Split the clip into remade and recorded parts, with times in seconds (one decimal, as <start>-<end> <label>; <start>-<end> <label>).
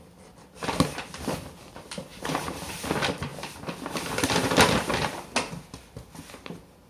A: 0.0-2.1 recorded; 2.1-2.9 remade; 2.9-6.9 recorded